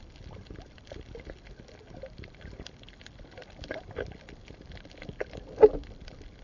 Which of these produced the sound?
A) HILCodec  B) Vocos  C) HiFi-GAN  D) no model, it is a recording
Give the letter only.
D